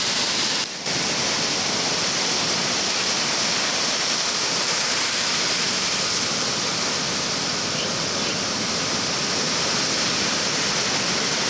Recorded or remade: remade